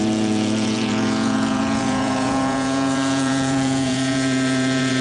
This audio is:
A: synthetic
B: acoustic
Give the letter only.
A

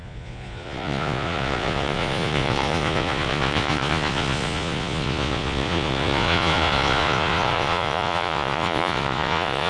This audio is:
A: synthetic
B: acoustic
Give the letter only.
A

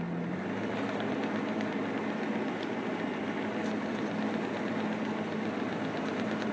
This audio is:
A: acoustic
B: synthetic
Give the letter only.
A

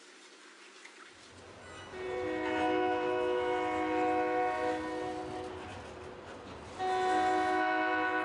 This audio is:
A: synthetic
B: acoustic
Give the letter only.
B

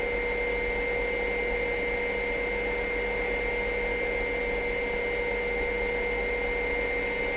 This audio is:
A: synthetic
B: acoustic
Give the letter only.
B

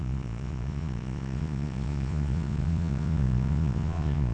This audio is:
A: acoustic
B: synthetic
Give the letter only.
B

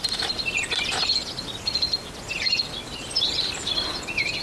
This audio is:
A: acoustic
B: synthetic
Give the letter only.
A